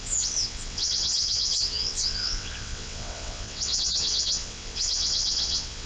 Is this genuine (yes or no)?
no